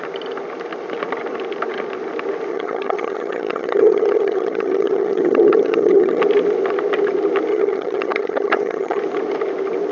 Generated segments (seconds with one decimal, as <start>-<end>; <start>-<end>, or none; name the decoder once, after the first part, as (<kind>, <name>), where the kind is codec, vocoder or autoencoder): 2.5-6.2 (vocoder, HiFi-GAN); 7.5-9.0